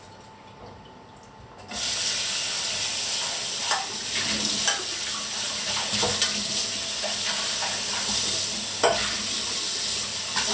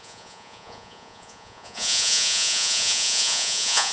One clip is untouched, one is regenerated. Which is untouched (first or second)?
first